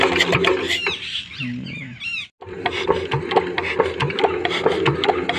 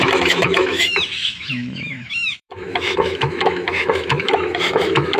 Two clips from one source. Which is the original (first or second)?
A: first